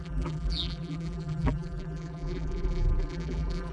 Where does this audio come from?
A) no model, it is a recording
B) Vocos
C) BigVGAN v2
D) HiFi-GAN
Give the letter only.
C